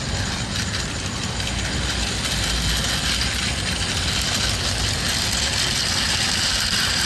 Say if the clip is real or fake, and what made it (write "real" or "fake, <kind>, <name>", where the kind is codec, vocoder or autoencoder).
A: real